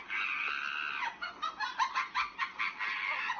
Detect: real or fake real